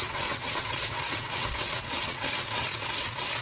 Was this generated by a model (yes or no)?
yes